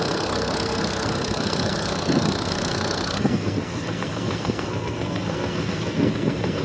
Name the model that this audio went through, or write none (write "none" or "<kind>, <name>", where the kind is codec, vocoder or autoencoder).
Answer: codec, SNAC